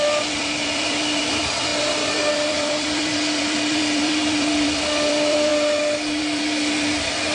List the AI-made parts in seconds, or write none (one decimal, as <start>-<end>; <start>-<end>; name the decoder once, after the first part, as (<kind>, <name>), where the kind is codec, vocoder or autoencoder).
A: 0.0-5.5 (vocoder, BigVGAN v2); 6.2-7.3